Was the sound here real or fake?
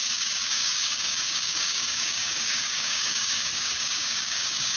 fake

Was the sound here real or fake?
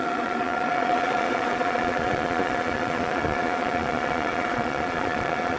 fake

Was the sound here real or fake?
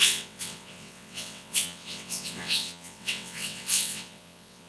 fake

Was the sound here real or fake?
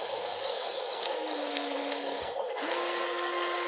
fake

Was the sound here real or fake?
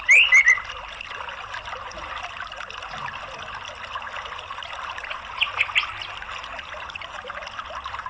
real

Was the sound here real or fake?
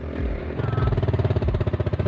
real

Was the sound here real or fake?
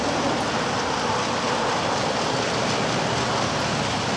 real